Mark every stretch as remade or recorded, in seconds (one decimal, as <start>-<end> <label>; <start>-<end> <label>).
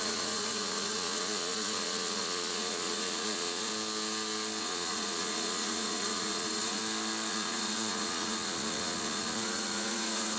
0.0-3.7 remade; 3.7-4.6 recorded; 4.6-6.8 remade; 6.8-7.3 recorded; 7.3-10.4 remade